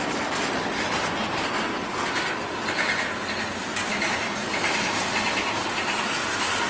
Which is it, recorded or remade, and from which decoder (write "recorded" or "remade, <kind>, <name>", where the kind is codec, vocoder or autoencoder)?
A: recorded